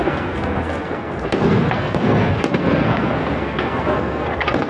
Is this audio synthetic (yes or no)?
yes